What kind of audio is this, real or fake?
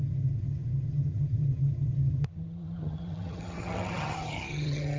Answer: fake